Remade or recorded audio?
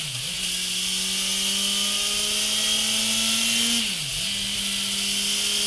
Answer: recorded